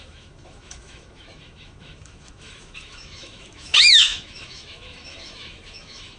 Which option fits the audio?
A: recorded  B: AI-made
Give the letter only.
B